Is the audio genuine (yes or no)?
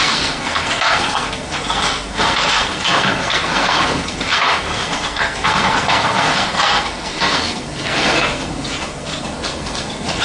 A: no